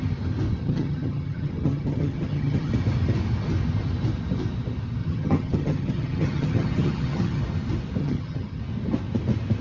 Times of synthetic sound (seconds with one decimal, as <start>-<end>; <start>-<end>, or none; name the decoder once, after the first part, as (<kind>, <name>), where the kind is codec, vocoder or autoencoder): 0.6-2.7 (vocoder, HiFi-GAN); 5.0-7.4; 8.0-8.6

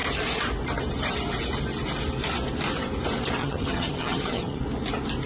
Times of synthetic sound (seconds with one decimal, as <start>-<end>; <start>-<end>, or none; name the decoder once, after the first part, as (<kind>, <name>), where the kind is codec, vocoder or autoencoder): 3.4-4.6 (vocoder, HiFi-GAN)

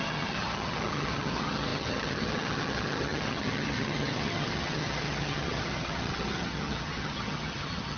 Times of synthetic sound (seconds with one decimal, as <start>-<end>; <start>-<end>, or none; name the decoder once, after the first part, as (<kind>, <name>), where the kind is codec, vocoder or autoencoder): 0.0-8.0 (vocoder, HiFi-GAN)

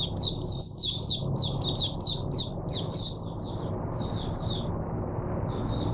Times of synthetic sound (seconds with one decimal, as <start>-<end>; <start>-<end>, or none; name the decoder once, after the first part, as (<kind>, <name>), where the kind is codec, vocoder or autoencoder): none

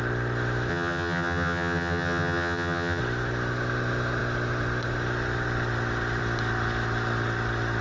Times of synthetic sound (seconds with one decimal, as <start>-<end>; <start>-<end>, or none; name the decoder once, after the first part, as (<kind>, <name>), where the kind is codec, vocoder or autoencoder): 0.7-3.0 (vocoder, HiFi-GAN)

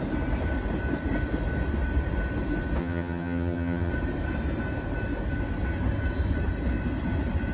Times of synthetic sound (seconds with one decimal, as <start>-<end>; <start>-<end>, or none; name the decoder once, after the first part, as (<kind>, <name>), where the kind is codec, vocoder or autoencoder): 2.8-3.9 (vocoder, HiFi-GAN)

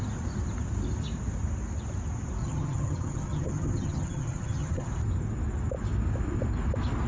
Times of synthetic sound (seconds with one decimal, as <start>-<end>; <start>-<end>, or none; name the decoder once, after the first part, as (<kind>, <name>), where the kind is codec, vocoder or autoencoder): 2.4-4.9 (vocoder, HiFi-GAN)